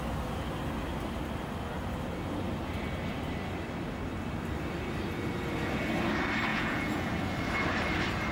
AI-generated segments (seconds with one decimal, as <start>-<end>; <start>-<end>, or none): 6.5-7.1